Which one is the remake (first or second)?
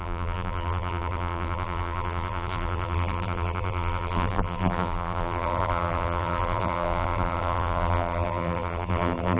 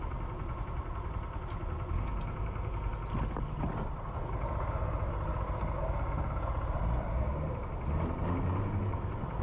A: first